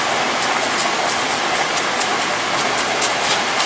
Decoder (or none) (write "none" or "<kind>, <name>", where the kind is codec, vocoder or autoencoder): none